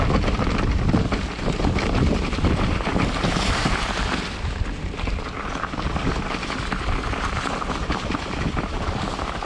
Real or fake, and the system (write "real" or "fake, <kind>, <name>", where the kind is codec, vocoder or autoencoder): real